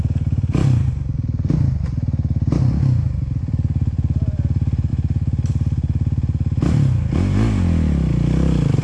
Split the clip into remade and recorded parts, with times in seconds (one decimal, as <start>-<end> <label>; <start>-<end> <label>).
0.0-0.6 remade; 0.6-3.4 recorded; 3.4-4.9 remade; 4.9-8.1 recorded; 8.1-8.8 remade